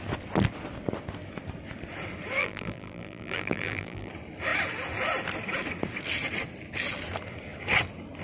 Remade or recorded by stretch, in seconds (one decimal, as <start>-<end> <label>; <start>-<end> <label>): 0.0-2.4 recorded; 2.4-4.1 remade; 4.1-8.2 recorded